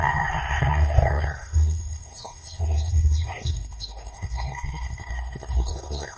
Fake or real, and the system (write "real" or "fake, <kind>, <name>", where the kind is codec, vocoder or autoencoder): fake, codec, SNAC